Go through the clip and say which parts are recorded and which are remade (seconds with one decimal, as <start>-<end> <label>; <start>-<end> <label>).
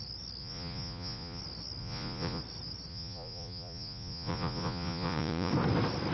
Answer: 0.0-0.4 recorded; 0.4-1.4 remade; 1.4-1.8 recorded; 1.8-2.4 remade; 2.4-2.9 recorded; 2.9-5.5 remade; 5.5-6.1 recorded